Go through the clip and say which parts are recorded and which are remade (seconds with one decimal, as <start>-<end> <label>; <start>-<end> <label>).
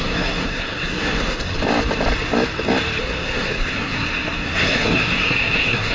0.0-1.5 remade; 1.5-3.0 recorded; 3.0-5.9 remade